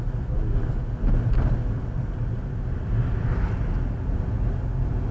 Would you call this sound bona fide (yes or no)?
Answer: yes